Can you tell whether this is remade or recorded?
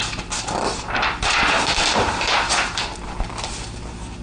recorded